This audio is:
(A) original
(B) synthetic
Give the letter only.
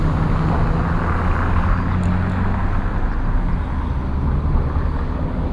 A